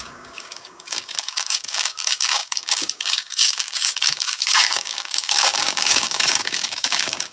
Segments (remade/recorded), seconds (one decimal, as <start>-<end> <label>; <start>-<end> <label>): 0.0-7.3 remade